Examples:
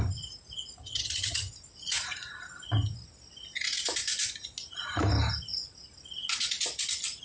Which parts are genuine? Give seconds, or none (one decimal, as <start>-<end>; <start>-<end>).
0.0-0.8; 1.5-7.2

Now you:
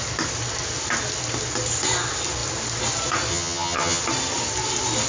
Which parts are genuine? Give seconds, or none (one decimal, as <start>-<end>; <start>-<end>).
0.0-3.3; 4.0-5.1

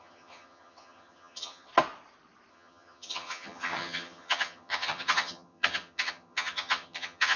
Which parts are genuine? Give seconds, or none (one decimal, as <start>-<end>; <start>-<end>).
1.7-2.5

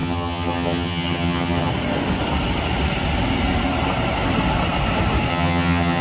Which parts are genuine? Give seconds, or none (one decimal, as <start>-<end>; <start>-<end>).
1.7-5.3

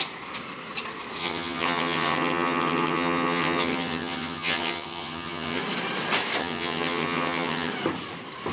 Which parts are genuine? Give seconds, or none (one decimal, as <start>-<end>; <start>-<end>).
0.0-1.2; 5.6-6.4; 7.7-8.5

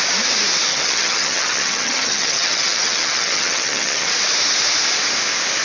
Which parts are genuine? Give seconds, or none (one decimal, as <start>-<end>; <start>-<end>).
0.0-0.7; 4.1-5.6

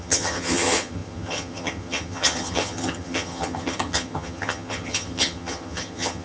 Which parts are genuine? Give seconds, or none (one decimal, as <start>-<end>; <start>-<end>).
none

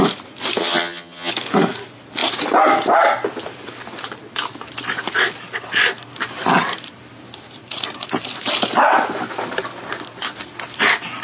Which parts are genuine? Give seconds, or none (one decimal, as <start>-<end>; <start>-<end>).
0.0-0.6; 1.3-11.2